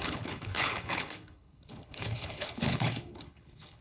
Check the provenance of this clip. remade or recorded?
remade